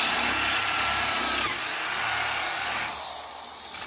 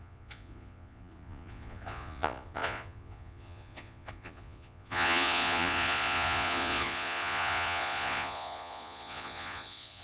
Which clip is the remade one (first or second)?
second